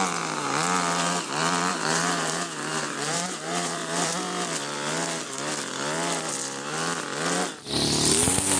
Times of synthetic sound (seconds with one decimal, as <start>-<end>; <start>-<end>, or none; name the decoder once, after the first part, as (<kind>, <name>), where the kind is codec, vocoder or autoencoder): 1.7-4.1 (vocoder, BigVGAN v2)